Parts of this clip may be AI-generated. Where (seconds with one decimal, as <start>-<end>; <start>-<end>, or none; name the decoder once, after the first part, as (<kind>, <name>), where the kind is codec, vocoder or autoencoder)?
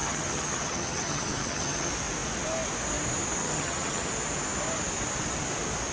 0.0-1.9 (vocoder, HiFi-GAN); 3.4-4.1